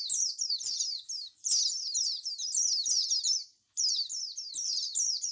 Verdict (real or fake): fake